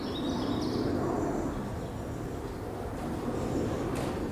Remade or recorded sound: recorded